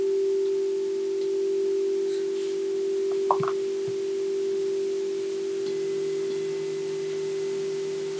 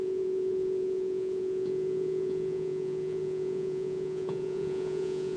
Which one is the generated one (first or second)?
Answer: second